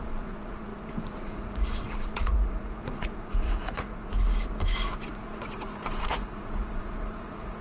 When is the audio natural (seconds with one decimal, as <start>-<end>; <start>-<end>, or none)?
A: 4.2-4.9